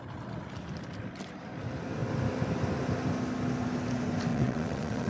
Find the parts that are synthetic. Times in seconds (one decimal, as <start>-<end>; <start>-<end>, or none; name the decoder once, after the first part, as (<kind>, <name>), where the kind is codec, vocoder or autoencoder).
4.3-5.1 (vocoder, WaveNeXt)